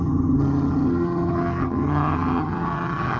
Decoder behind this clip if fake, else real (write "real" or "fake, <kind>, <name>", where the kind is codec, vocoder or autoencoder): fake, vocoder, HiFi-GAN